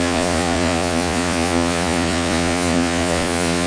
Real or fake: fake